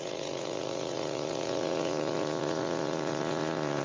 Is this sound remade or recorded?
remade